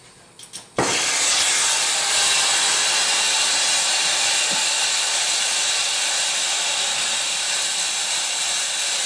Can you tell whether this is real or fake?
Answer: real